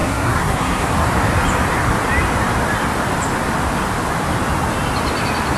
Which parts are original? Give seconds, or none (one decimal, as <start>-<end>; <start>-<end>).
1.1-5.6